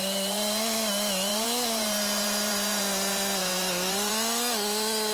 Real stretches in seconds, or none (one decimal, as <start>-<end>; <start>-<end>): 0.9-1.3; 4.1-5.1